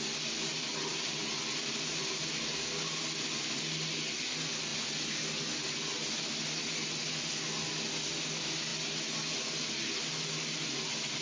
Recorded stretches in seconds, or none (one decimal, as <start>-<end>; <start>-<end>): 0.0-11.2